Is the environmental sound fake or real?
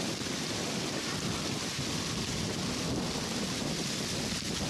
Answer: real